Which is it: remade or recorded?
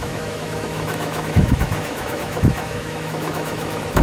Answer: remade